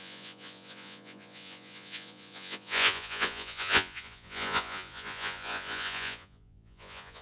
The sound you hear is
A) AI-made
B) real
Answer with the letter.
A